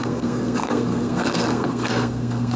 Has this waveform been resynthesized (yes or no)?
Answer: yes